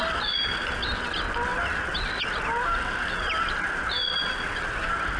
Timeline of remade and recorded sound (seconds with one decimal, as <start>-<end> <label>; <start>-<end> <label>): 0.0-5.2 recorded